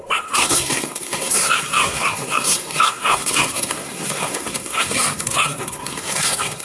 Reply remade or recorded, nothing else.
remade